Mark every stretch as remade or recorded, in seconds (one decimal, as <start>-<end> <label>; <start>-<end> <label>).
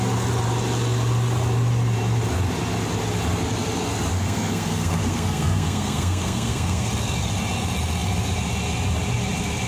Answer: 0.0-4.1 recorded; 4.1-6.9 remade; 6.9-9.7 recorded